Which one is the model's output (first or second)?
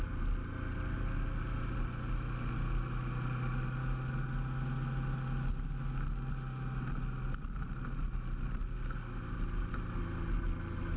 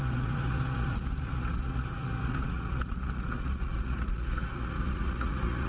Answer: second